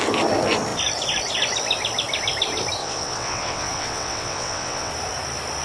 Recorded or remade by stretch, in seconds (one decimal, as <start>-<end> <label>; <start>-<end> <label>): 0.0-2.8 recorded; 2.8-4.9 remade; 4.9-5.6 recorded